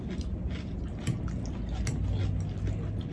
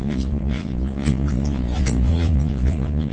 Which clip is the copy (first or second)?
second